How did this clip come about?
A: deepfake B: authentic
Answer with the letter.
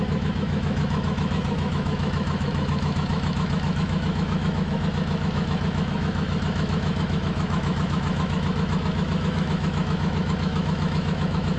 A